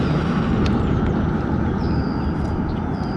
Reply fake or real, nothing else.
real